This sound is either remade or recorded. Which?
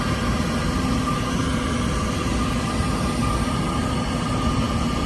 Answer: recorded